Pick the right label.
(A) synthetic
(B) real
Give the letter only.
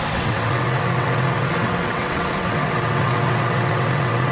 A